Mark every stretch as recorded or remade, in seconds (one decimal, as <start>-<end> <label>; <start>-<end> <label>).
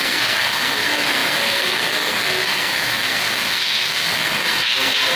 0.0-5.1 remade